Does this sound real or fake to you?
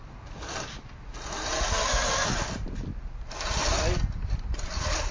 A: real